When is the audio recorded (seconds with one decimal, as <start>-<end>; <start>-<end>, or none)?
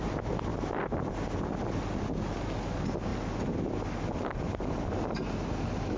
0.0-6.0